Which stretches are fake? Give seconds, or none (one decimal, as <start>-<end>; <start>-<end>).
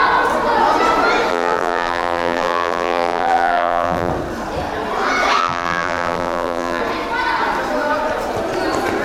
1.3-4.1; 5.4-6.8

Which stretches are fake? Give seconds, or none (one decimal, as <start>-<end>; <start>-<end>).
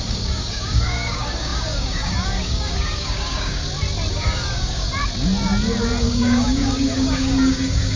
0.0-3.6; 4.1-4.9; 6.0-8.0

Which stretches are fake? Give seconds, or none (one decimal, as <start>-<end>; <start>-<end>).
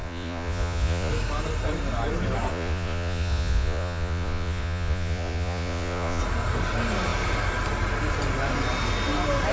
0.0-1.1; 2.5-6.2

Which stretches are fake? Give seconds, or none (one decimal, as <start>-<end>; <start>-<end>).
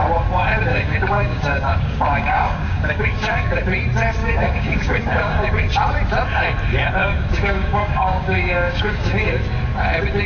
0.7-3.5; 4.2-5.7; 7.0-9.3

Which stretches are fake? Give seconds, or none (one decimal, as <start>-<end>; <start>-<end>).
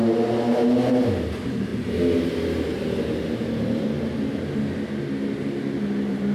none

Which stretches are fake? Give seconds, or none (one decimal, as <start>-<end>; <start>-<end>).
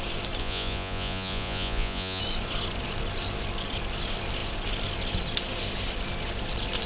0.4-2.2